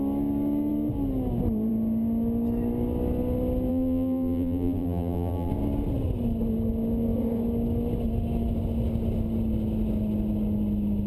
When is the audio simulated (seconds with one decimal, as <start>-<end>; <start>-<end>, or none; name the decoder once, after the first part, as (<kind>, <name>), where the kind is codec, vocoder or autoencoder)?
3.7-5.5 (vocoder, BigVGAN v2)